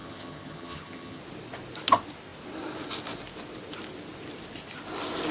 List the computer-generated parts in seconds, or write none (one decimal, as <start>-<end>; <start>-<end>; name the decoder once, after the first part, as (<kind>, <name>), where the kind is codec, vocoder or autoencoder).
0.0-1.2 (vocoder, HiFi-GAN)